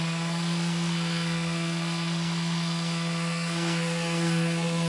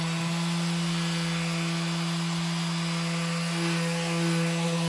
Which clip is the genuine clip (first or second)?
second